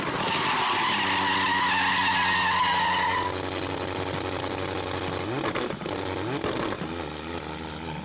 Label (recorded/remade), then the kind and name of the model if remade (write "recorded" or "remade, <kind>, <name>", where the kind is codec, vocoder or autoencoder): recorded